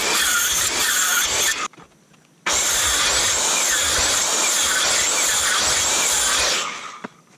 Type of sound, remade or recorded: recorded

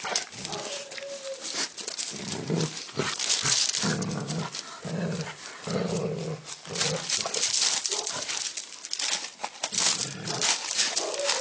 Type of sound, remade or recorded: recorded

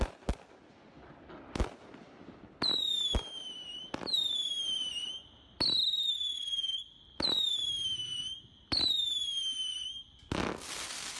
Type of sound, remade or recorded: recorded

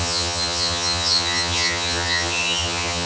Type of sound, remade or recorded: remade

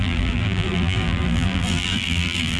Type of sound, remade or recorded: remade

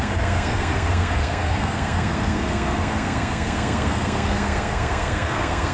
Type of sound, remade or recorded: remade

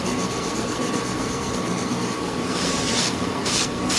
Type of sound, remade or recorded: remade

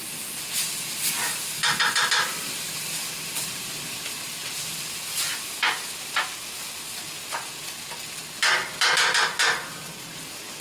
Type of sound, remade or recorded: recorded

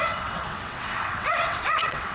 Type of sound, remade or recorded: remade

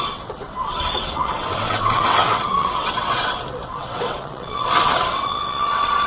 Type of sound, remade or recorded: remade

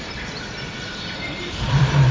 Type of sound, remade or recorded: remade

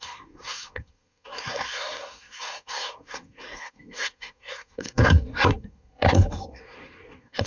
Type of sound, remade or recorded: remade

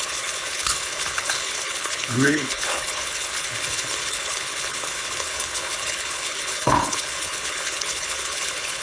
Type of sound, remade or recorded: remade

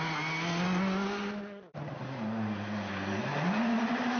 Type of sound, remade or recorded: recorded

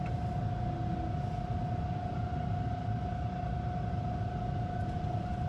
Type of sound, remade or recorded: recorded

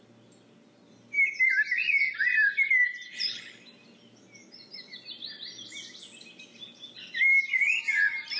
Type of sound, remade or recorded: recorded